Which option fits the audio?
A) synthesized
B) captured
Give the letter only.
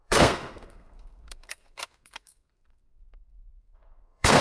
A